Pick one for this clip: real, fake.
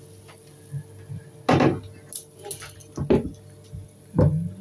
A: real